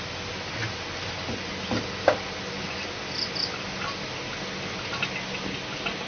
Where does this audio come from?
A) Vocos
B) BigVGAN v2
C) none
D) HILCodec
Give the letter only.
C